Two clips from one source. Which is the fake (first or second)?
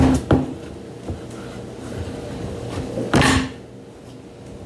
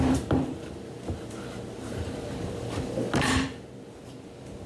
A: second